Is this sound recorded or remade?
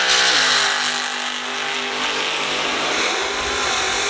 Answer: recorded